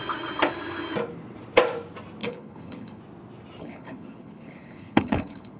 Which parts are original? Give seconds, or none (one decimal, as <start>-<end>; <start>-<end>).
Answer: 0.0-2.2; 3.0-3.6